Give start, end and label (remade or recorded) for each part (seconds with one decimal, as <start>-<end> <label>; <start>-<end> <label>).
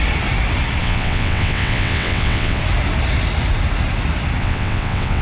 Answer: 0.0-0.8 recorded; 0.8-2.6 remade; 2.6-4.4 recorded; 4.4-5.2 remade